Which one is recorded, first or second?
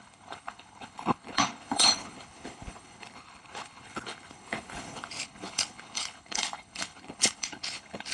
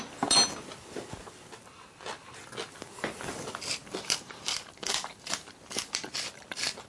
second